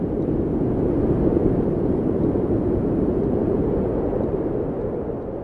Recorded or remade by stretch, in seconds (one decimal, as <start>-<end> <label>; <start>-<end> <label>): 0.0-1.3 recorded; 1.3-4.5 remade; 4.5-5.4 recorded